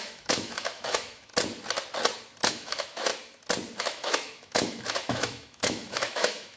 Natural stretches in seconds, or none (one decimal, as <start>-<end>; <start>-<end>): 1.3-2.5; 3.1-3.8